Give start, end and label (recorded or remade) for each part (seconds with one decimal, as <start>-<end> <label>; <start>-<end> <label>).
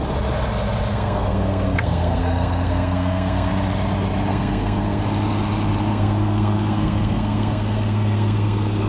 0.0-0.9 recorded; 0.9-3.5 remade; 3.5-4.3 recorded; 4.3-5.0 remade; 5.0-5.9 recorded; 5.9-8.9 remade